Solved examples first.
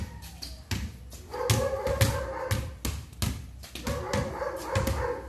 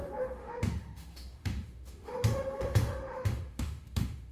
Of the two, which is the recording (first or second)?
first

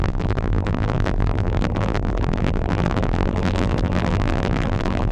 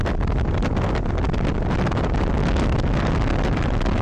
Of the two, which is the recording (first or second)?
second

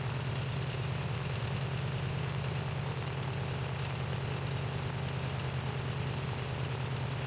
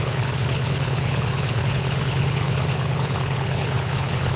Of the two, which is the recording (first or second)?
first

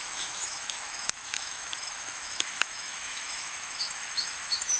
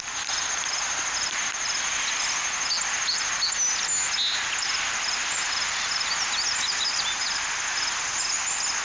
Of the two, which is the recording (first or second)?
second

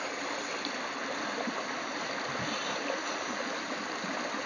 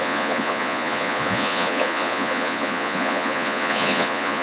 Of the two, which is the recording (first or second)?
first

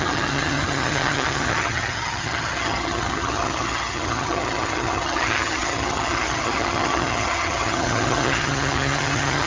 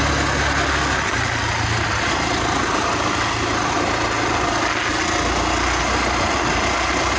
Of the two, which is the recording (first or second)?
second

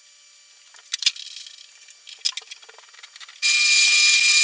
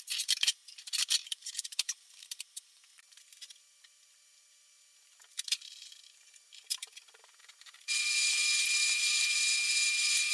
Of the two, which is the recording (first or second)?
first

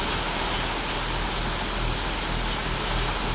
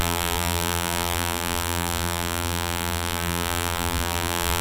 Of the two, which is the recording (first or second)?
first